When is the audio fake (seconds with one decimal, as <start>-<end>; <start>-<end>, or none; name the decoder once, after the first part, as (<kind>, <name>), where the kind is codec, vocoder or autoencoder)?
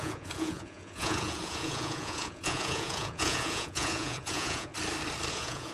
0.0-4.7 (vocoder, Vocos); 5.3-5.7